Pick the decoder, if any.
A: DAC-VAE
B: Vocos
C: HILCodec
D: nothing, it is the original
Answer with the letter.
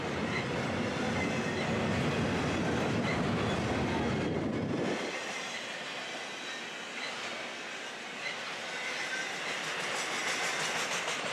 D